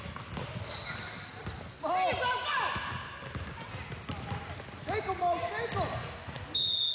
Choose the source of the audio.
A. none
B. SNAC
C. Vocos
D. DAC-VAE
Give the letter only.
A